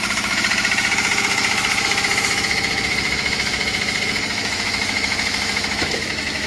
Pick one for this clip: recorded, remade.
remade